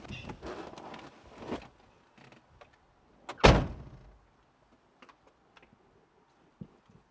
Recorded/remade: recorded